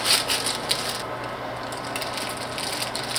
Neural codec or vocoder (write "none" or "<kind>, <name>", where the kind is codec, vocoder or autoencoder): none